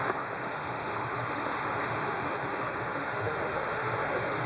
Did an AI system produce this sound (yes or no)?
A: yes